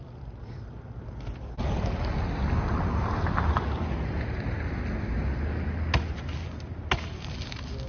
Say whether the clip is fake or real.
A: real